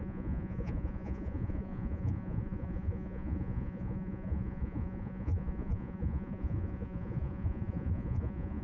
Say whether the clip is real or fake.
fake